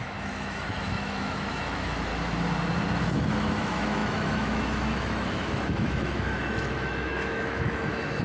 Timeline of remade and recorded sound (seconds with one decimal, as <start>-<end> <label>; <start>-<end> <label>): 0.0-2.1 remade; 2.1-3.0 recorded; 3.0-8.2 remade